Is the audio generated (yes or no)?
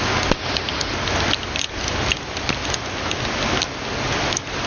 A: no